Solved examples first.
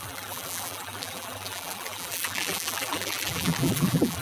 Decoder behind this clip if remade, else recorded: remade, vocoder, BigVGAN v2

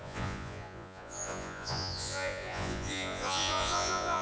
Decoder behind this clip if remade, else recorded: remade, vocoder, Vocos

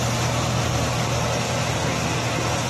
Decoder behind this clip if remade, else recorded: recorded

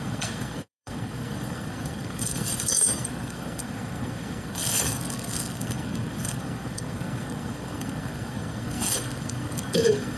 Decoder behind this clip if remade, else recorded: remade, codec, SNAC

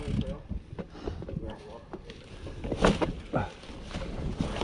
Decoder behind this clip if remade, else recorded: recorded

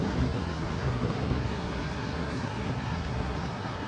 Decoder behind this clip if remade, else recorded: remade, codec, SNAC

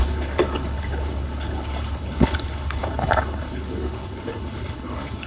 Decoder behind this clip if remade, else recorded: remade, codec, HILCodec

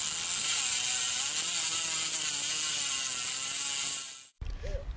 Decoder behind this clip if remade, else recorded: recorded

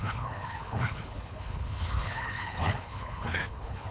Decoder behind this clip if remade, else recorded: remade, codec, HILCodec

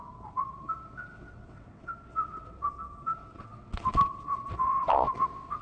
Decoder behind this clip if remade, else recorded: remade, vocoder, WaveNeXt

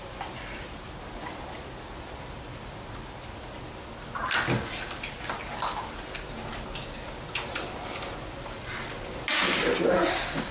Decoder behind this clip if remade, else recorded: recorded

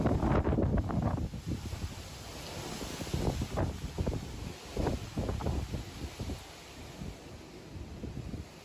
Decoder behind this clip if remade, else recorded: recorded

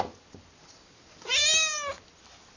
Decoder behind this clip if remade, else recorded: recorded